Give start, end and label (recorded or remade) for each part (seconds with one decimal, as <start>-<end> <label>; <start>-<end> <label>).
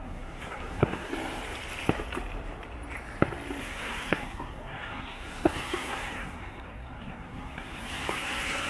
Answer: 0.0-1.1 remade; 1.1-3.6 recorded; 3.6-8.7 remade